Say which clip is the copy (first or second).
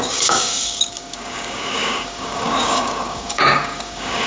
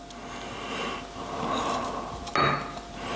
first